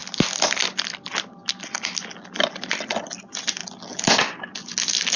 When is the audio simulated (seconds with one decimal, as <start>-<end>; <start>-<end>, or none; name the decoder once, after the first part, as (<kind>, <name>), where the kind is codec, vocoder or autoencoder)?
none